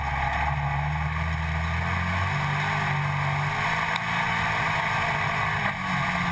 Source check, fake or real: real